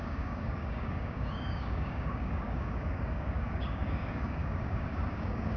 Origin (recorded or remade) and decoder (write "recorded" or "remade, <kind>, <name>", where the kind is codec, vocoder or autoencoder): remade, codec, DAC